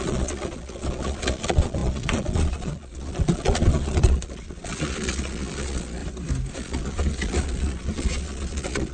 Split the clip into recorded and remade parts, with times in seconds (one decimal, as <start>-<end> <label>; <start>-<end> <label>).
0.0-6.0 remade; 6.0-6.5 recorded; 6.5-8.9 remade